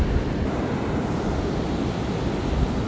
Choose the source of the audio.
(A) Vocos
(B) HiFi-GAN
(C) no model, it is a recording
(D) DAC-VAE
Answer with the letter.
C